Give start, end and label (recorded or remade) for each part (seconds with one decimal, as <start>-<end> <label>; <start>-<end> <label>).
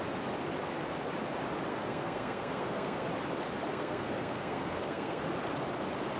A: 0.0-1.7 recorded; 1.7-3.1 remade; 3.1-3.7 recorded; 3.7-5.2 remade; 5.2-6.2 recorded